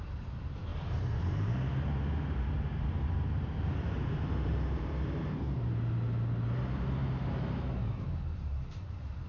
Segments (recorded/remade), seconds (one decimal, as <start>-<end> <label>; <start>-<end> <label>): 0.0-0.7 recorded; 0.7-5.2 remade; 5.2-7.0 recorded; 7.0-8.1 remade; 8.1-9.3 recorded